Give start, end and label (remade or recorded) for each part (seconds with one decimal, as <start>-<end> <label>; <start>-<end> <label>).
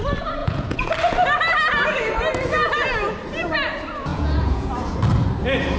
0.0-0.4 recorded; 0.4-0.9 remade; 0.9-4.1 recorded; 4.1-4.7 remade; 4.7-5.8 recorded